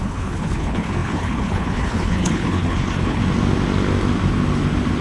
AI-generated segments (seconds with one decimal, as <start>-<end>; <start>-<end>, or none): 0.0-3.2